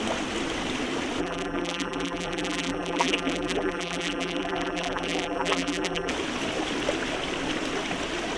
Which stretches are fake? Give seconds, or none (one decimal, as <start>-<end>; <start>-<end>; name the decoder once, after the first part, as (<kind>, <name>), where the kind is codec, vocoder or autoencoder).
1.2-6.1 (vocoder, BigVGAN v2)